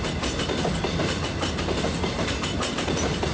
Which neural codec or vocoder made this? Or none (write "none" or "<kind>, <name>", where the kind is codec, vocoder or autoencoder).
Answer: none